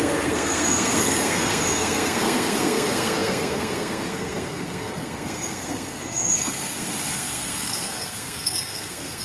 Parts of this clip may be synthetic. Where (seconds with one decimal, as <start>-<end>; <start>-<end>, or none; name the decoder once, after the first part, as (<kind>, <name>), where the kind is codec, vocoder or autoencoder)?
0.0-9.2 (codec, SNAC)